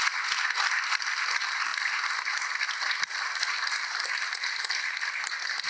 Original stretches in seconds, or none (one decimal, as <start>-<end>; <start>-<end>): 0.0-5.7